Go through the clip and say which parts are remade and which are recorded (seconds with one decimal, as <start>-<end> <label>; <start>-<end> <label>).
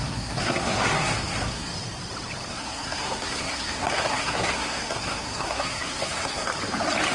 0.0-1.7 remade; 1.7-2.5 recorded; 2.5-6.5 remade; 6.5-7.1 recorded